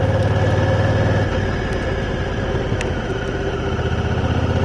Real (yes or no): yes